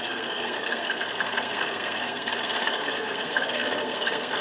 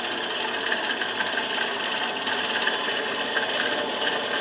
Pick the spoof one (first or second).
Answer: first